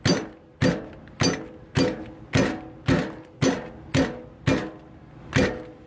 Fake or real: real